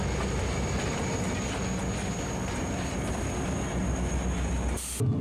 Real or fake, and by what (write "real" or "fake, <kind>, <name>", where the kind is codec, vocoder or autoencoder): real